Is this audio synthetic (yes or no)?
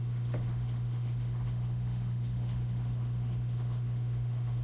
yes